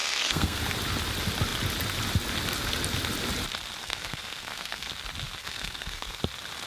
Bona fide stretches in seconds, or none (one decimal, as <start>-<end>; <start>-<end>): 0.6-3.8; 4.9-5.4; 6.2-6.7